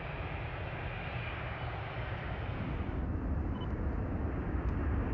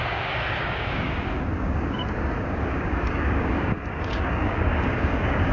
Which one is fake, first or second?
second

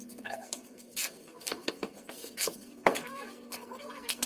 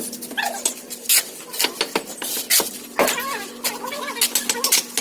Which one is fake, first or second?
first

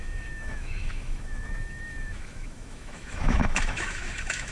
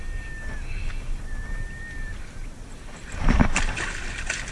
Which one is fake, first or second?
first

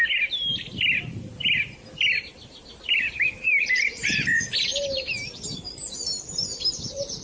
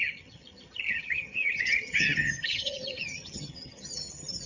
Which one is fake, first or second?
second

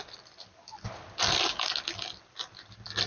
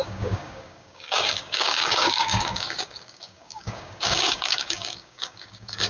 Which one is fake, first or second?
second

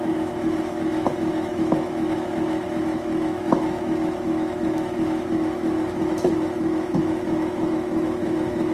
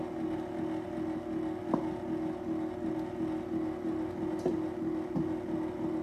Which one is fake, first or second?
first